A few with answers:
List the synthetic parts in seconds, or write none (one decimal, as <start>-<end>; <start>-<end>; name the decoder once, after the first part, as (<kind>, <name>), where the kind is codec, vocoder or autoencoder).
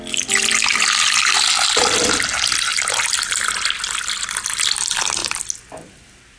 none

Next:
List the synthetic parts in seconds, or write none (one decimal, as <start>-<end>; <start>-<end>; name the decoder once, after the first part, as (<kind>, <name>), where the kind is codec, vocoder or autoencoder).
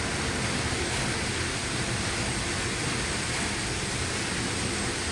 none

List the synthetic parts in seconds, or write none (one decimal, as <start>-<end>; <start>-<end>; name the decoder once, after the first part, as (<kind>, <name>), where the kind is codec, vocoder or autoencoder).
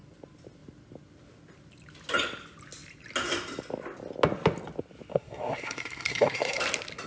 5.1-6.6 (codec, SNAC)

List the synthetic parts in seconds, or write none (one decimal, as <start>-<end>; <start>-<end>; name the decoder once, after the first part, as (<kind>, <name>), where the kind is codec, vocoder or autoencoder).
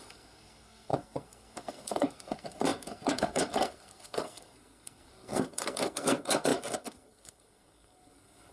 0.0-8.5 (codec, SNAC)